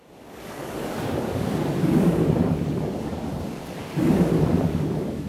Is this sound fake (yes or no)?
yes